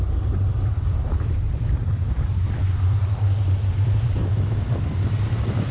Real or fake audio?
fake